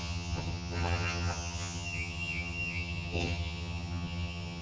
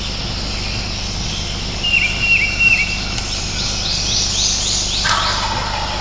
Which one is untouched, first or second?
second